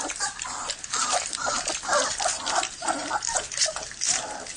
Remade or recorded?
recorded